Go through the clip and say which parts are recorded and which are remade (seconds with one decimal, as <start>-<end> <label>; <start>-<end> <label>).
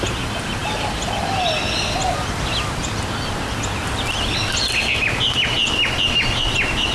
0.0-6.9 recorded